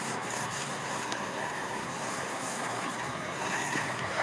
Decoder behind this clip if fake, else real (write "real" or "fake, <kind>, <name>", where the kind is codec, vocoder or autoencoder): fake, codec, SNAC